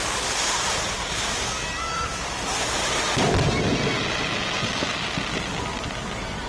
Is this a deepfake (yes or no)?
no